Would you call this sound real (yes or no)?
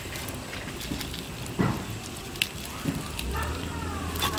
yes